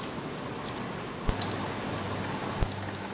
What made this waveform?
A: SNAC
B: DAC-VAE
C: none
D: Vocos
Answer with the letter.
C